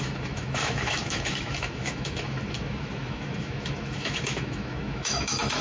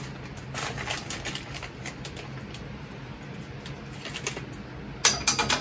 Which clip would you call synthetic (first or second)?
first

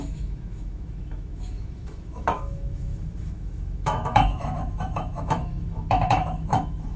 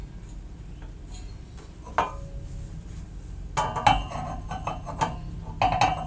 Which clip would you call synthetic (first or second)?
first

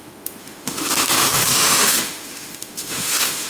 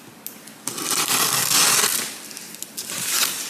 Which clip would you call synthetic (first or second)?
first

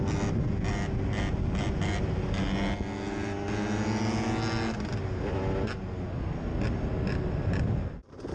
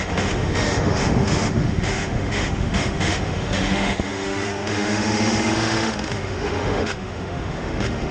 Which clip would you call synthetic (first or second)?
second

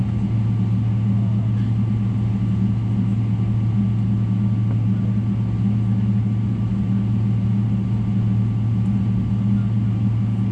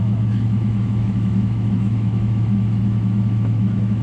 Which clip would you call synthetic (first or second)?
second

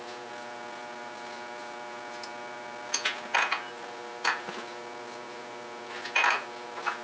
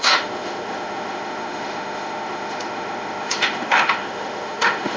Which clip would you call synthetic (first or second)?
second